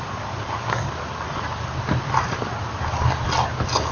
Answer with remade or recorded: remade